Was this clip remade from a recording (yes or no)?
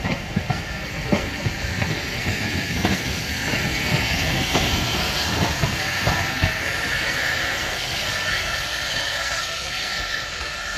yes